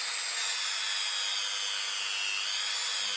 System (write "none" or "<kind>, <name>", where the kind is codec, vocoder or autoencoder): none